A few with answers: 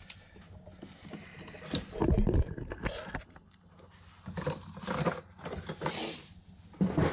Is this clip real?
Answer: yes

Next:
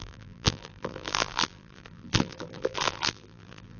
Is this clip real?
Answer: no